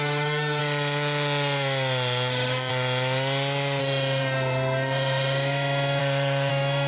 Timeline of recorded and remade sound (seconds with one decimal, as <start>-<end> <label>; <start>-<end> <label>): 0.0-0.6 remade; 0.6-2.3 recorded; 2.3-2.7 remade; 2.7-3.8 recorded; 3.8-6.0 remade; 6.0-6.5 recorded; 6.5-6.9 remade